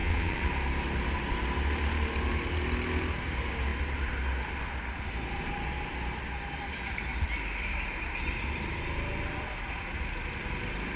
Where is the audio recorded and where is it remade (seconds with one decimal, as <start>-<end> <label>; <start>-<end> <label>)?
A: 0.0-0.5 remade; 0.5-11.0 recorded

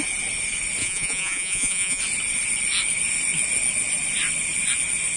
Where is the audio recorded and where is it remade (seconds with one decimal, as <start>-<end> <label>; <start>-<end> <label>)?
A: 0.0-0.8 recorded; 0.8-2.0 remade; 2.0-5.2 recorded